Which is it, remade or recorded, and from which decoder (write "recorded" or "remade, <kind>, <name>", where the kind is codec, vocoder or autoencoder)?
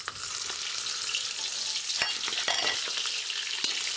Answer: recorded